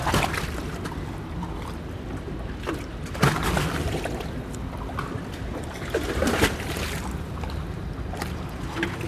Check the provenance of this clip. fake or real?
real